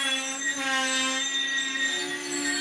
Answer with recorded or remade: recorded